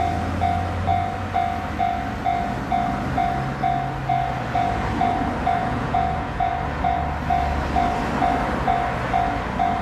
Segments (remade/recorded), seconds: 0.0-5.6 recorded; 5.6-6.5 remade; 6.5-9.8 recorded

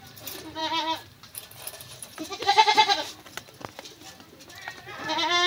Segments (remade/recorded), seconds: 0.0-0.6 recorded; 0.6-2.4 remade; 2.4-5.5 recorded

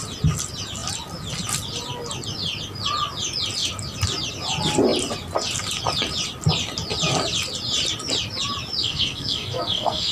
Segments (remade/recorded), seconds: 0.0-8.8 recorded; 8.8-10.1 remade

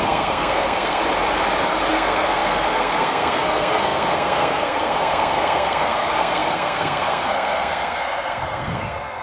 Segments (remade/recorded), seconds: 0.0-1.0 remade; 1.0-1.9 recorded; 1.9-9.2 remade

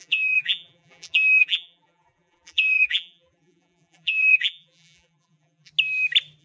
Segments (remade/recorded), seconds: 0.0-5.7 remade; 5.7-6.4 recorded

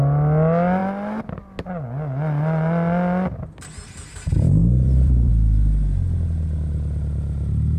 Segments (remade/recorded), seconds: 0.0-4.6 recorded; 4.6-5.3 remade; 5.3-7.8 recorded